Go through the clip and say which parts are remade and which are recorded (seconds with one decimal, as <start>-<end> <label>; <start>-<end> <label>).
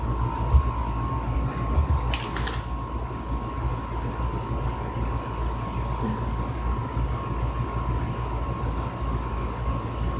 0.0-10.2 recorded